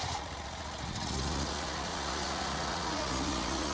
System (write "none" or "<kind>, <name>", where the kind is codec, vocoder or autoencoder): vocoder, Vocos